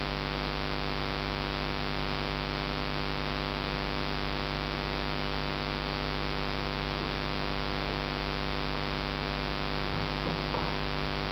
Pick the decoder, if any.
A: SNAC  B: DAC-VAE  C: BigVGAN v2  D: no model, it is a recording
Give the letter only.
D